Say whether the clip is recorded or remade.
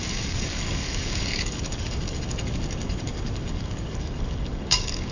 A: remade